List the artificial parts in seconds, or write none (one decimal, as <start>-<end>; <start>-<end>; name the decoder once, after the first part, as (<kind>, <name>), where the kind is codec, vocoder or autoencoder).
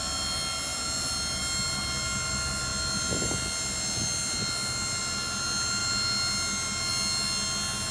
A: none